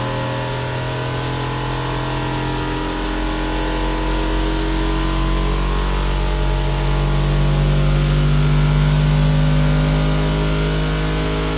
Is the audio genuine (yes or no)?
yes